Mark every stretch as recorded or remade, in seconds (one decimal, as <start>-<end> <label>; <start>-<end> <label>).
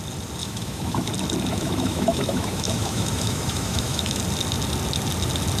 0.0-0.4 recorded; 0.4-1.1 remade; 1.1-1.5 recorded; 1.5-4.2 remade; 4.2-5.6 recorded